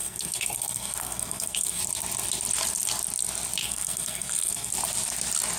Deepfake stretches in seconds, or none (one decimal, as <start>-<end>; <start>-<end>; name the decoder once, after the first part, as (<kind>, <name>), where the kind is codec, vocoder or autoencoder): 0.0-1.8 (codec, SNAC); 3.6-4.7

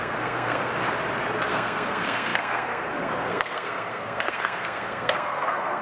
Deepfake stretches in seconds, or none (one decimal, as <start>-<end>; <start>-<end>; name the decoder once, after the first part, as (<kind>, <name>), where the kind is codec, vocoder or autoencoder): 0.0-0.7 (codec, SNAC); 1.5-5.8

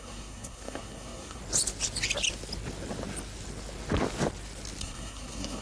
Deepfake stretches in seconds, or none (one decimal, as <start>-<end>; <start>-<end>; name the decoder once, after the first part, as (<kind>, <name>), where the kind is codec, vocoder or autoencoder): 0.0-1.4 (codec, SNAC); 4.8-5.6